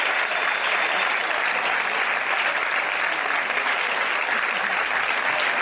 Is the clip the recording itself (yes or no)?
yes